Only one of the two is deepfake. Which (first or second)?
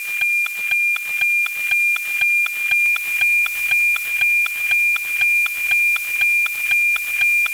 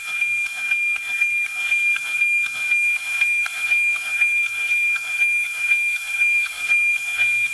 second